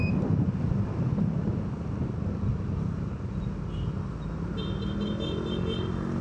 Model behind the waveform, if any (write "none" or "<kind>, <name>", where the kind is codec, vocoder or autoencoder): none